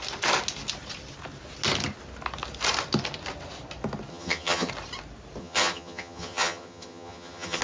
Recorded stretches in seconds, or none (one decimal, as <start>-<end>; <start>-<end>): 0.0-4.1; 4.7-5.4